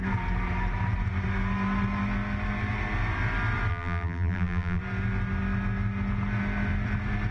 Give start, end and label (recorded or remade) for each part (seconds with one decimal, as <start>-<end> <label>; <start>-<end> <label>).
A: 0.0-3.7 recorded; 3.7-4.8 remade; 4.8-7.3 recorded